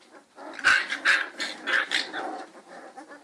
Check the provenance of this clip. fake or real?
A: real